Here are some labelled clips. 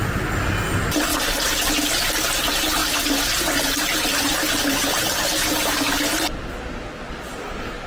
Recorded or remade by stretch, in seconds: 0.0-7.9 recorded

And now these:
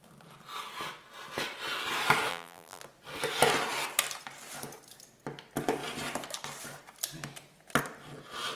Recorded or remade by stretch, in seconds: 0.0-2.3 recorded; 2.3-2.8 remade; 2.8-8.6 recorded

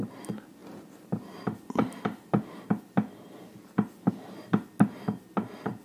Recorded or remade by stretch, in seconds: 0.0-5.8 recorded

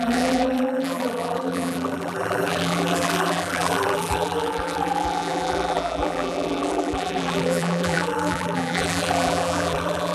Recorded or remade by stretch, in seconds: 0.0-10.1 remade